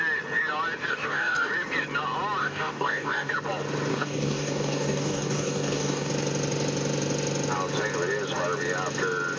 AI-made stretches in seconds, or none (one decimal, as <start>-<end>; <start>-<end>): 0.9-1.5; 2.4-3.3; 3.9-6.1